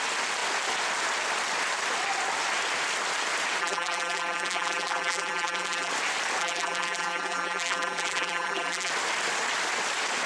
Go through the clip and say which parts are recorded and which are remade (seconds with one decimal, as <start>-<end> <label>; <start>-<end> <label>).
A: 0.0-3.6 recorded; 3.6-5.9 remade; 5.9-6.4 recorded; 6.4-8.9 remade; 8.9-10.3 recorded